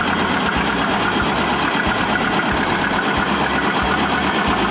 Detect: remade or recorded recorded